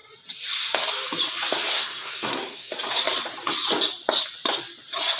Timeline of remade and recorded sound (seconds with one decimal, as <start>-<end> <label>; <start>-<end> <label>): 0.0-1.7 recorded; 1.7-2.7 remade; 2.7-5.2 recorded